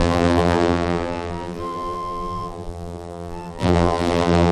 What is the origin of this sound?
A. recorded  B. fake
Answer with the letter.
B